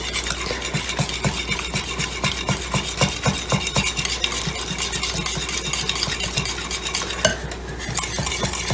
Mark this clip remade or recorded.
recorded